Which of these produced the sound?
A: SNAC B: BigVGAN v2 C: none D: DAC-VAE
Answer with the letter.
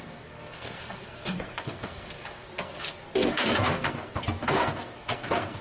A